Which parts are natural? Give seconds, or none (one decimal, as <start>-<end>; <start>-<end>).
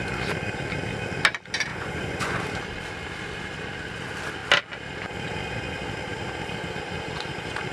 0.0-1.7; 2.4-7.7